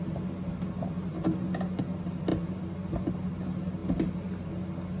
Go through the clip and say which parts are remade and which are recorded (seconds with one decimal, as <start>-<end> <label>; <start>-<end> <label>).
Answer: 0.0-5.0 recorded